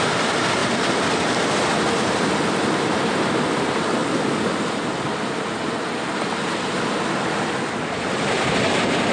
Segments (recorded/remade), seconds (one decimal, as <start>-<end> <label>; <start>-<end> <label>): 0.0-4.0 remade; 4.0-7.8 recorded; 7.8-9.1 remade

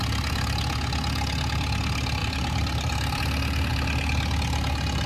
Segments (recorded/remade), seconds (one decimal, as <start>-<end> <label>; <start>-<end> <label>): 0.0-2.2 recorded; 2.2-3.2 remade; 3.2-5.1 recorded

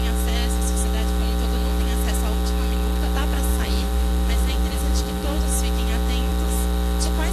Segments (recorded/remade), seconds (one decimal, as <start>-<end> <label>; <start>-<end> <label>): 0.0-3.5 recorded; 3.5-5.4 remade; 5.4-7.3 recorded

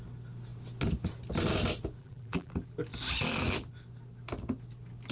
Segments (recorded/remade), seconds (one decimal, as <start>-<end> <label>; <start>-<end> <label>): 0.0-2.0 recorded; 2.0-2.5 remade; 2.5-5.1 recorded

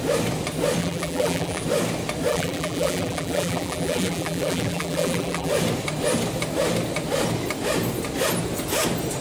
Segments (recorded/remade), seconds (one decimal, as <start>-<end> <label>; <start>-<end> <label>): 0.0-0.8 recorded; 0.8-1.6 remade; 1.6-2.3 recorded; 2.3-5.5 remade; 5.5-9.2 recorded

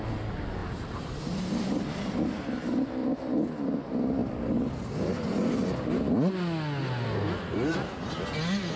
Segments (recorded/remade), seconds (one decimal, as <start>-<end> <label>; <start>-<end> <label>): 0.0-0.6 recorded; 0.6-2.2 remade; 2.2-8.8 recorded